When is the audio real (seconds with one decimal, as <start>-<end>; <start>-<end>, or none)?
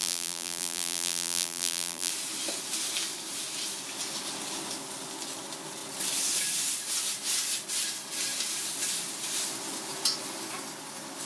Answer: 2.1-11.3